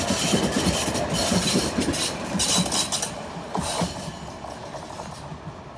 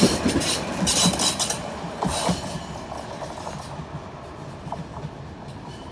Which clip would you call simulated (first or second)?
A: first